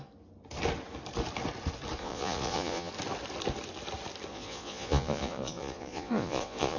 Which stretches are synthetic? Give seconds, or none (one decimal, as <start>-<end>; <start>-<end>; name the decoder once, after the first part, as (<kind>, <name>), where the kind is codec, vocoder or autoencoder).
2.0-2.9 (vocoder, Vocos); 4.3-6.8